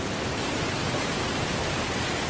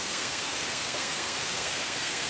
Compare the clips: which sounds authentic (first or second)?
first